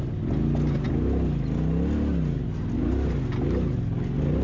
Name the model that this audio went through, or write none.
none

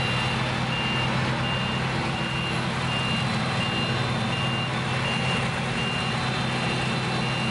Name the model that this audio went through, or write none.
none